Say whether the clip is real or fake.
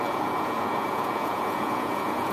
fake